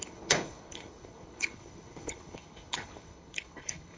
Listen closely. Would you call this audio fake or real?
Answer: fake